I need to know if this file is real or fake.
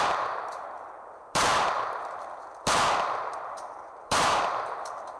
fake